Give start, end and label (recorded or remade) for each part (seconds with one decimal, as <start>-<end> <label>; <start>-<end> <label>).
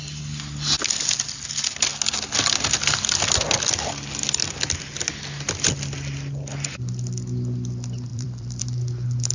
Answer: 0.0-8.1 recorded; 8.1-8.6 remade; 8.6-9.3 recorded